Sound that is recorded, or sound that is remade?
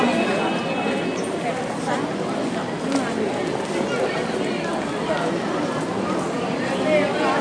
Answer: recorded